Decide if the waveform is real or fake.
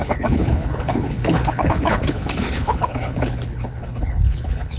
fake